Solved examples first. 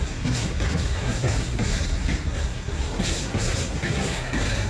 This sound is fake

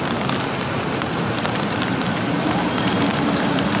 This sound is fake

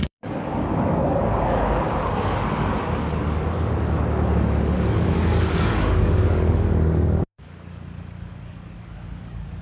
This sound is fake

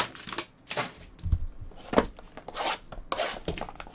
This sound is real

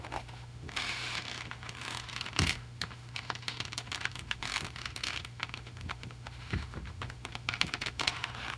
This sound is fake